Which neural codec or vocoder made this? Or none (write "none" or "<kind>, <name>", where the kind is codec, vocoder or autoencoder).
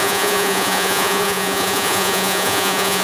vocoder, Vocos